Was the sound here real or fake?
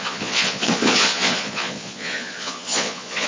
fake